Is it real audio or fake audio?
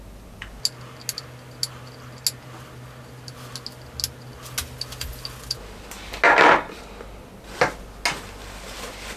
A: real